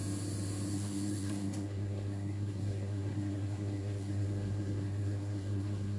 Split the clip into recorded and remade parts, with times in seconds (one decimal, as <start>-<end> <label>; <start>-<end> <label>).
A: 0.0-0.7 recorded; 0.7-6.0 remade